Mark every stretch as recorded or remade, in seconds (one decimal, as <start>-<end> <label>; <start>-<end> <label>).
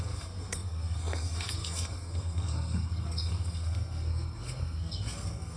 0.0-5.6 remade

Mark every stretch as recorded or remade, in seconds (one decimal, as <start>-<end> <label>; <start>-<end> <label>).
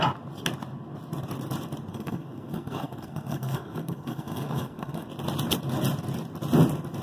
0.0-1.9 recorded; 1.9-5.1 remade; 5.1-7.0 recorded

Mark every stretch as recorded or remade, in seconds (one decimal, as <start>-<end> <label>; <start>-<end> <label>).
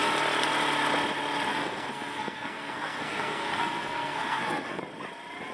0.0-1.5 recorded; 1.5-4.8 remade; 4.8-5.5 recorded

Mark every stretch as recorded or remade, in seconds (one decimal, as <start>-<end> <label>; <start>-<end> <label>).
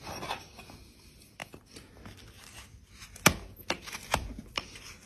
0.0-5.1 recorded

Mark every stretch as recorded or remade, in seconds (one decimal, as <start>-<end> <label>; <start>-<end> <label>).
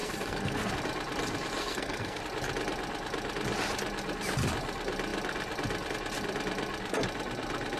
0.0-0.7 remade; 0.7-1.6 recorded; 1.6-2.2 remade; 2.2-7.8 recorded